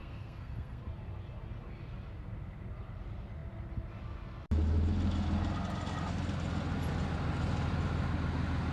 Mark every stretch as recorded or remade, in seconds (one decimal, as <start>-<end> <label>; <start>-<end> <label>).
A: 0.0-0.8 remade; 0.8-8.7 recorded